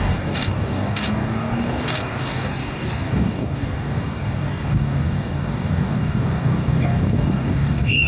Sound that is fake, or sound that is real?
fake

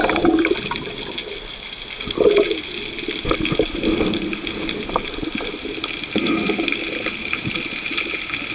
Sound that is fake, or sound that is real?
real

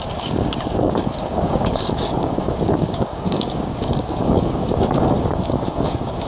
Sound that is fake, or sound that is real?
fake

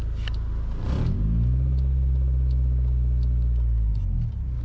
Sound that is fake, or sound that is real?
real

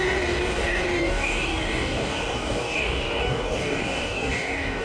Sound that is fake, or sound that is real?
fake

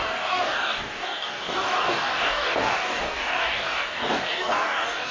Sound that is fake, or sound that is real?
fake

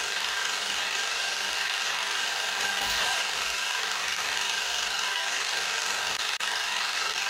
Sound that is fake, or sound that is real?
fake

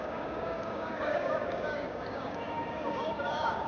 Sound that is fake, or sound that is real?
fake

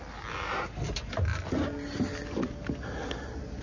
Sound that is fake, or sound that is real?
real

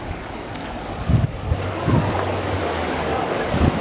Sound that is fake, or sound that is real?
fake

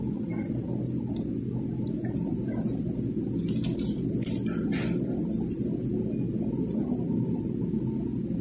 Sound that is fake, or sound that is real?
real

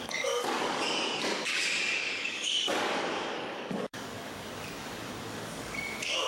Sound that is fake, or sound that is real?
fake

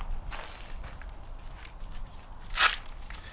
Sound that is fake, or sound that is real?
real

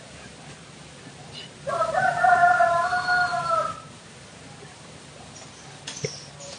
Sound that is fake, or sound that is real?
real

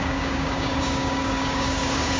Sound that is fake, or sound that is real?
fake